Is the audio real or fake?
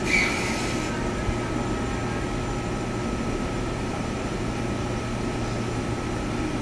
real